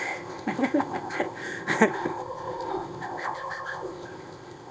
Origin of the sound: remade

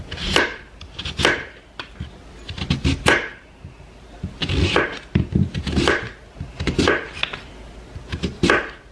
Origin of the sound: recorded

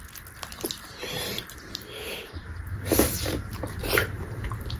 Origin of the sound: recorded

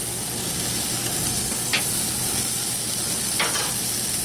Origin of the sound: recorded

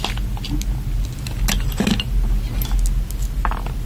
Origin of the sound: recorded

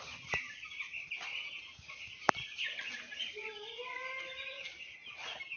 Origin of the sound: recorded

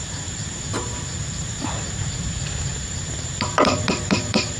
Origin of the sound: remade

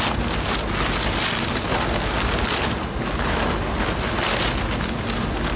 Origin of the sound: recorded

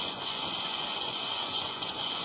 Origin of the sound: remade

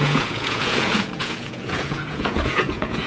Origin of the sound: remade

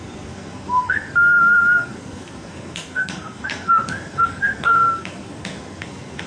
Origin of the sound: remade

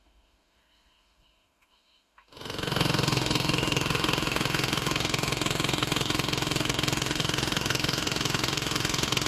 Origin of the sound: remade